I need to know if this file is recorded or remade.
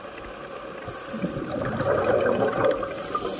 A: remade